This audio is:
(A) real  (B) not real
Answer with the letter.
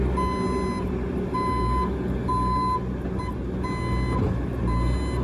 A